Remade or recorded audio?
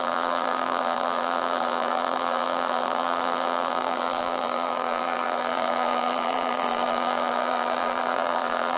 remade